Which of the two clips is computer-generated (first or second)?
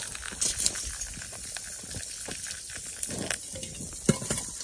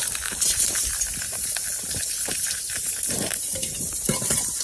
second